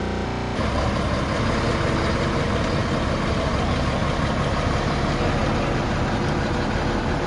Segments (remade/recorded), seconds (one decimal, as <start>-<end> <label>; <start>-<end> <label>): 0.0-7.3 recorded